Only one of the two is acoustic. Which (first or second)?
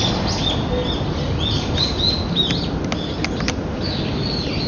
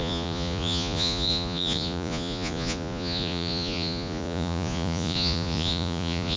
first